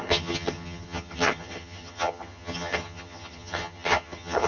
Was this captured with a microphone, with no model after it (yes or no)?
no